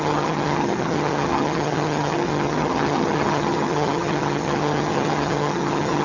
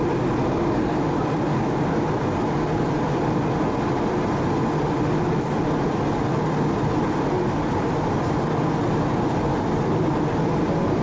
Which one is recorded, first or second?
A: second